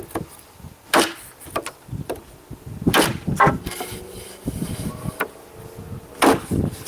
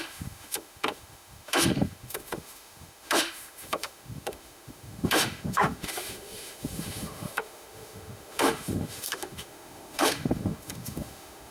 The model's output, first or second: second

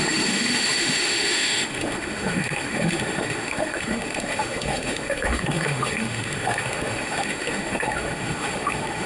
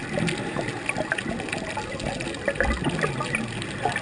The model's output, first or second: first